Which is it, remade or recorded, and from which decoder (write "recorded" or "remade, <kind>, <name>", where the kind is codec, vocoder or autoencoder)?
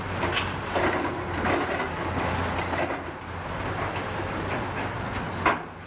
recorded